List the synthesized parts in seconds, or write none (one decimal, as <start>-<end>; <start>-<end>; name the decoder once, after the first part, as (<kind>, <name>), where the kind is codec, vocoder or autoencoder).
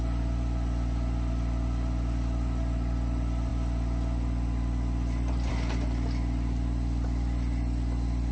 none